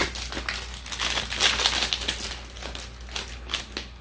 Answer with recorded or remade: recorded